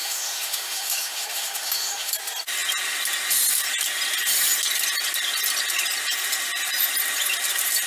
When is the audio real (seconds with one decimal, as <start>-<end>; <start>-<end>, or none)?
2.1-7.9